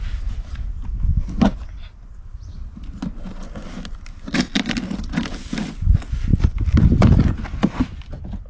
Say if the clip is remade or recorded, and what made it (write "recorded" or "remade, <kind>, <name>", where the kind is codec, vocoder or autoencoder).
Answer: recorded